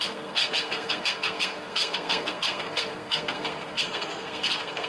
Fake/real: fake